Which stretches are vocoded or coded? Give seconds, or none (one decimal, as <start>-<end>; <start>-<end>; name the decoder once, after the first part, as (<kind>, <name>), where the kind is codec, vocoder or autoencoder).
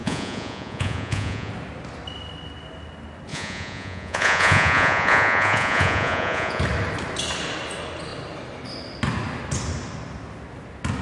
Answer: 0.0-1.5 (vocoder, Vocos); 3.3-6.6